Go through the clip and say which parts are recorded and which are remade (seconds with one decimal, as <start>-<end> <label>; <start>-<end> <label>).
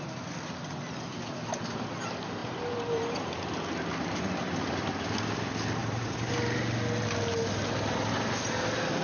0.0-5.8 recorded; 5.8-6.3 remade; 6.3-9.0 recorded